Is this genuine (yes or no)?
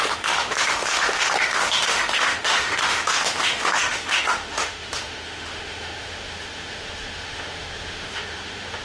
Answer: no